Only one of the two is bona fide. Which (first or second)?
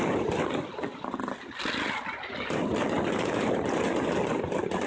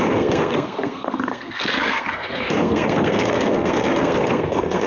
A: first